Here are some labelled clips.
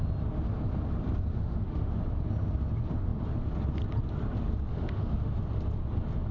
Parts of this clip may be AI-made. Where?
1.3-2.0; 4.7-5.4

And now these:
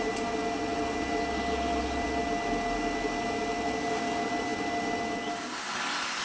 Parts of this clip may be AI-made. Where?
none

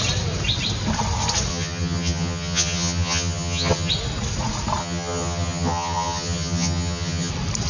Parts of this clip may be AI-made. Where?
1.5-3.9; 4.8-7.3

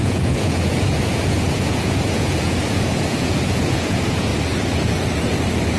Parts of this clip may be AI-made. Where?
0.0-4.3

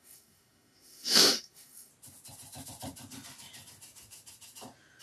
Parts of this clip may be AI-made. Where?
0.0-1.9